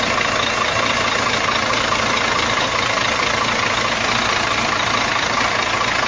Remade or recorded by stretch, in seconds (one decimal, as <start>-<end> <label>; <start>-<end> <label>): 0.0-6.1 recorded